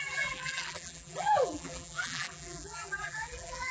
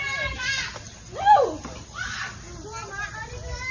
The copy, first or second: first